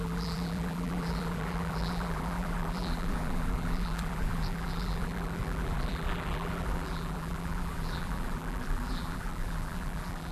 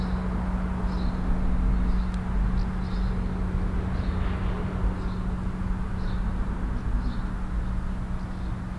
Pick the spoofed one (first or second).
first